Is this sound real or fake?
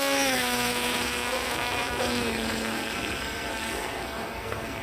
fake